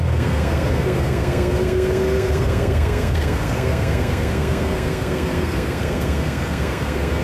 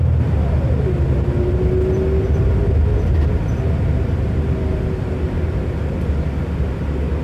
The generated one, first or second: first